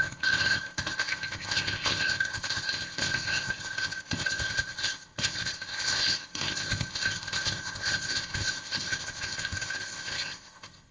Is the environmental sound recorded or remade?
remade